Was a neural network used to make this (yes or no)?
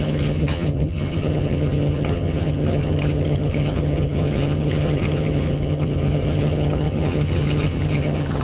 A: yes